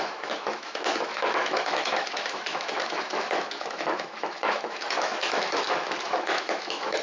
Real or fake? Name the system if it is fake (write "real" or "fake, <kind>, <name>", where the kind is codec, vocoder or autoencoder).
fake, autoencoder, DAC-VAE